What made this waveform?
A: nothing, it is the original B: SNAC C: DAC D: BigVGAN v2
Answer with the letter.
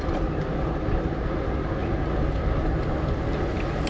A